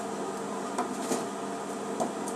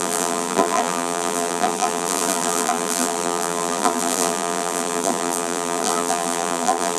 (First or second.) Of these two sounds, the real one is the first